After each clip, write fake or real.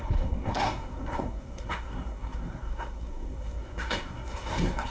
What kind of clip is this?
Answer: fake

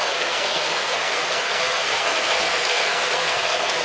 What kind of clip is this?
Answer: fake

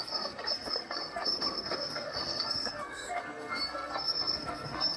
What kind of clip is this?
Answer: fake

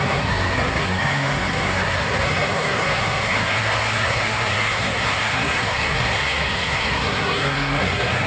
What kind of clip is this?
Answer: fake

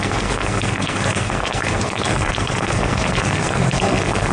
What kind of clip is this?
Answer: fake